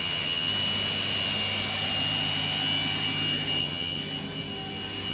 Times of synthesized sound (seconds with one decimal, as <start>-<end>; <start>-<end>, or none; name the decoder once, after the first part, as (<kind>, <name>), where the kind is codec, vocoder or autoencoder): 0.0-0.5 (vocoder, HiFi-GAN); 3.6-4.0